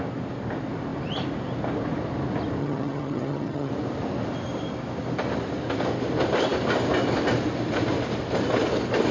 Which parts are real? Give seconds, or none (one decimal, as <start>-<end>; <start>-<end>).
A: 0.0-2.6; 3.7-9.1